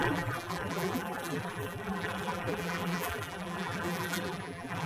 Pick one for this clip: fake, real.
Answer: fake